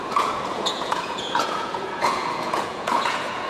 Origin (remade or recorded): remade